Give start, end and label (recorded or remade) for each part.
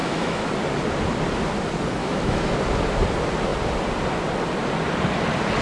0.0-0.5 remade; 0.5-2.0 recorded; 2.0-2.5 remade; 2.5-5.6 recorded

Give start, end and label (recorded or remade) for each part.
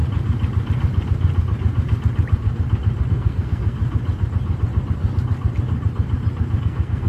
0.0-3.1 recorded; 3.1-3.8 remade; 3.8-6.6 recorded; 6.6-7.1 remade